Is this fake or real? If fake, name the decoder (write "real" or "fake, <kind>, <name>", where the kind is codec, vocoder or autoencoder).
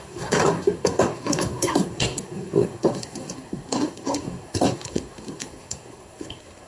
fake, codec, SNAC